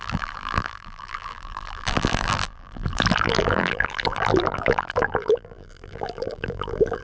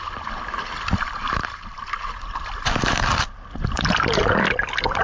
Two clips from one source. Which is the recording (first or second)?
second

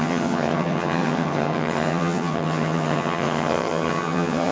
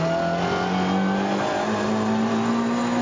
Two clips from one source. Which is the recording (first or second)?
second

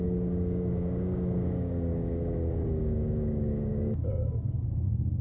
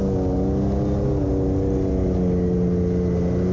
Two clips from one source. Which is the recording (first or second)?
second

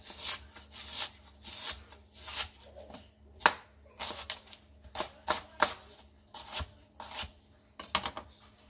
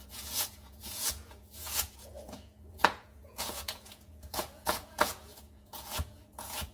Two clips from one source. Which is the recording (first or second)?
first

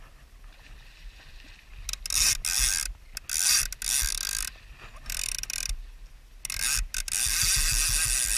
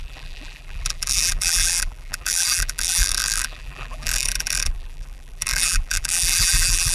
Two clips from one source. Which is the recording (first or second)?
first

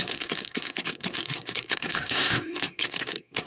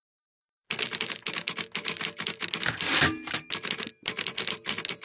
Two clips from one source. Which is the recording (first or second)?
second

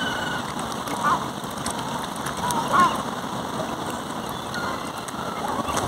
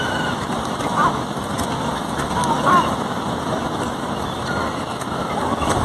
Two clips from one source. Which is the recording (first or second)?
first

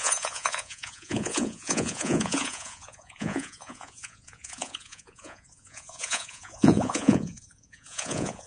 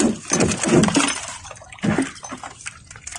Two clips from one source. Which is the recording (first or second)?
second